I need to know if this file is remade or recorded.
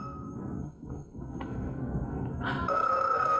remade